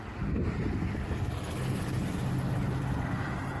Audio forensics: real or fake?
real